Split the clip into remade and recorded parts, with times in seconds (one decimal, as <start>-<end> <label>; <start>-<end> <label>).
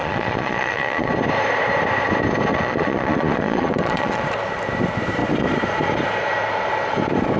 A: 0.0-1.1 remade; 1.1-2.5 recorded; 2.5-4.2 remade; 4.2-7.4 recorded